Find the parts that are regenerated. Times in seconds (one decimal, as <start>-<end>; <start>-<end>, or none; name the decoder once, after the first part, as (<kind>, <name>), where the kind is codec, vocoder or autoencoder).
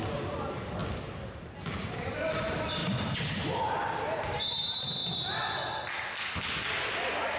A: 0.8-2.2 (vocoder, BigVGAN v2); 2.8-3.7